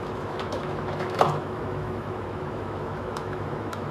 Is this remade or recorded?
remade